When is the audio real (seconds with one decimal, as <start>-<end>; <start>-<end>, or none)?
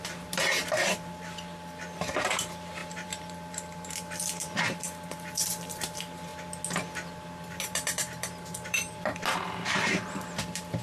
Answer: 6.3-7.5